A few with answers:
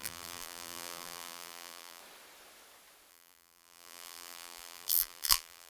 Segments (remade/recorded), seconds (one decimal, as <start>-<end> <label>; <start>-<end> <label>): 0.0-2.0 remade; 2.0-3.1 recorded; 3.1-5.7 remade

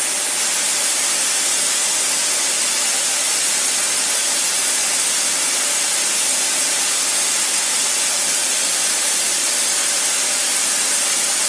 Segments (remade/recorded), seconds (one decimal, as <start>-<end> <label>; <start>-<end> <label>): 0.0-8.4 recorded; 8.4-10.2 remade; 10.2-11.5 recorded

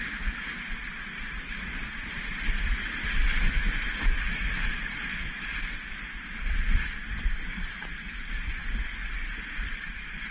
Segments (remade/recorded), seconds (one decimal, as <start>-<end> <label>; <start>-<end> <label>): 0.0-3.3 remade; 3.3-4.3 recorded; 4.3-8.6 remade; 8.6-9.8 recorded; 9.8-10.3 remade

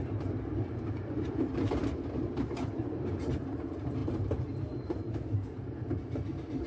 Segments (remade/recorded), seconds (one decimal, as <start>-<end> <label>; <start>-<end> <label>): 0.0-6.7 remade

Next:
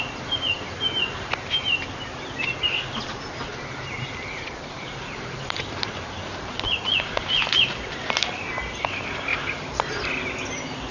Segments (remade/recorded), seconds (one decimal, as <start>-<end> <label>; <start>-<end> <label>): 0.0-3.5 recorded; 3.5-7.5 remade; 7.5-10.9 recorded

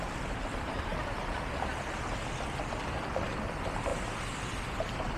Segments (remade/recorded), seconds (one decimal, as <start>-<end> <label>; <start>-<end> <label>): 0.0-5.2 recorded

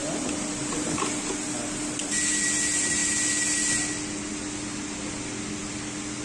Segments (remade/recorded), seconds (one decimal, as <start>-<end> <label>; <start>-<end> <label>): 0.0-6.2 recorded

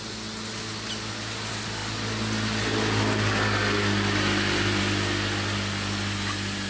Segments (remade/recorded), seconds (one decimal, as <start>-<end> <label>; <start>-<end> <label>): 0.0-6.7 recorded